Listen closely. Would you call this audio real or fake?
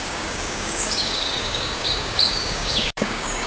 fake